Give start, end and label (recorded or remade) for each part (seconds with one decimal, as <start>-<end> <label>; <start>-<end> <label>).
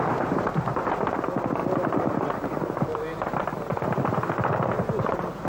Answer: 0.0-5.5 recorded